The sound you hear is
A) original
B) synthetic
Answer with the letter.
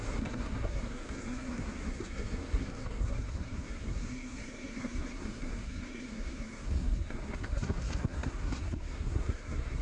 B